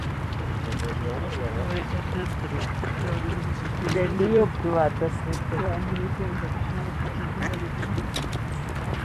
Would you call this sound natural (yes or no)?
no